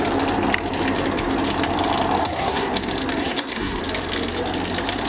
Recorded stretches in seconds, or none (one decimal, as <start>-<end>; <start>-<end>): 0.0-2.2; 2.7-3.2; 3.8-5.1